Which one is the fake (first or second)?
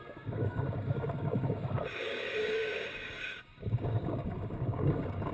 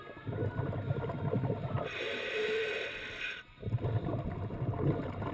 first